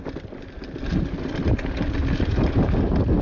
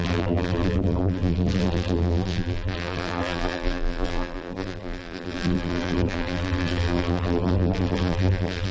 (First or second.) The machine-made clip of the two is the second